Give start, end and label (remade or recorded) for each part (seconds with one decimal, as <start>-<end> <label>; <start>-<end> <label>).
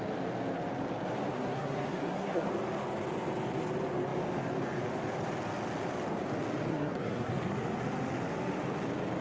0.0-1.3 recorded; 1.3-2.5 remade; 2.5-6.7 recorded; 6.7-7.3 remade; 7.3-9.2 recorded